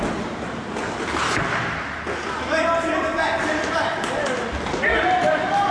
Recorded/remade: recorded